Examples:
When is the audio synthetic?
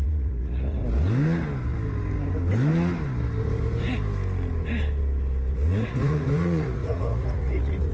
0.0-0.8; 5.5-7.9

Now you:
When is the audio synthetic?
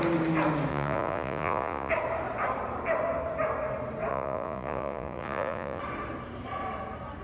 0.7-1.9; 4.1-5.8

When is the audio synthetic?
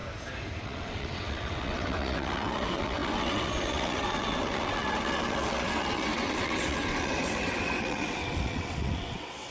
0.6-9.5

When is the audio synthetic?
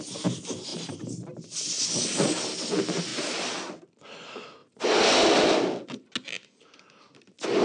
none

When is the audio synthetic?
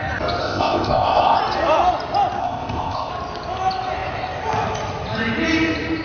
0.4-1.4; 2.4-3.1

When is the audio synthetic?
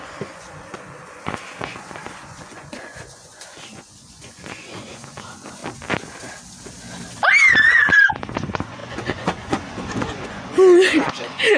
0.0-5.6; 8.1-11.6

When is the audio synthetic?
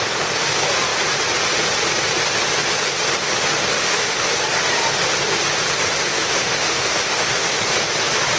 3.8-4.3; 6.1-7.6